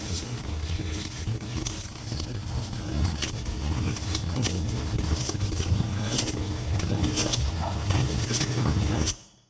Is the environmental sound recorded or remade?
remade